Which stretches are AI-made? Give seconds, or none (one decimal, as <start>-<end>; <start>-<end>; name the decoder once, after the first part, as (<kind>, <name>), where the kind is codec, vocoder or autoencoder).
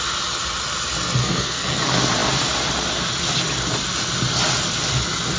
1.2-1.8 (codec, SNAC)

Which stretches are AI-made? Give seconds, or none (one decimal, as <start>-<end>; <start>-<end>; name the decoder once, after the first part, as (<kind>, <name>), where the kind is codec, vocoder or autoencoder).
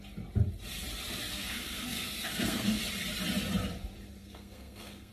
1.3-2.8 (codec, SNAC); 4.2-5.1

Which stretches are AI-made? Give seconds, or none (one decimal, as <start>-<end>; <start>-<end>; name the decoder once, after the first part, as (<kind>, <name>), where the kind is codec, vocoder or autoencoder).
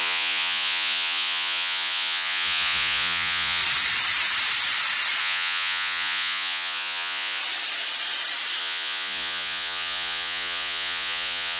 0.0-3.6 (vocoder, Vocos); 5.2-7.4; 8.6-11.6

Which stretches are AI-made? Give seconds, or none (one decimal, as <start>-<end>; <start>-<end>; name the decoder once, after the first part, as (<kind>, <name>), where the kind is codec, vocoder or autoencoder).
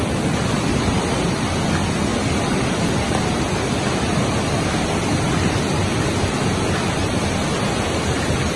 none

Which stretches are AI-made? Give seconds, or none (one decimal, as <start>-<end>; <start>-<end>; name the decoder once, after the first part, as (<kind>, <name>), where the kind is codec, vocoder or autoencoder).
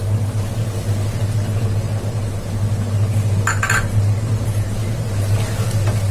none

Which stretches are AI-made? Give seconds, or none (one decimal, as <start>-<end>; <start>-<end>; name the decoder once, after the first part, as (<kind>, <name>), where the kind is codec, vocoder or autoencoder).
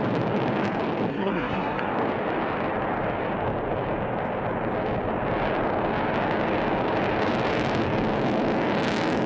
1.1-1.9 (codec, SNAC)